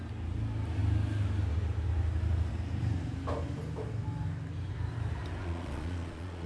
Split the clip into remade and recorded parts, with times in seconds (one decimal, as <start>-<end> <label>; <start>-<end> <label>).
0.0-5.4 recorded; 5.4-6.5 remade